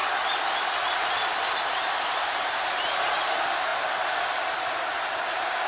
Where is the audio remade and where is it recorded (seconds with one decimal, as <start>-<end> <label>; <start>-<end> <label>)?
0.0-1.7 recorded; 1.7-3.7 remade; 3.7-4.7 recorded; 4.7-5.7 remade